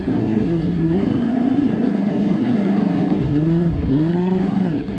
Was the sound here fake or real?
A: fake